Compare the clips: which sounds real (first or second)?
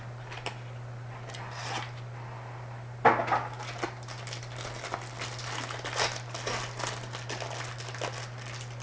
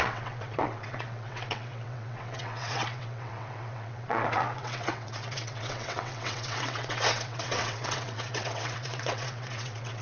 first